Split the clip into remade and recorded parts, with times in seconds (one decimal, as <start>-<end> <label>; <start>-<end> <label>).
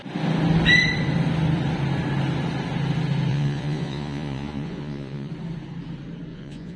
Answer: 0.0-3.3 recorded; 3.3-5.3 remade; 5.3-6.3 recorded; 6.3-6.8 remade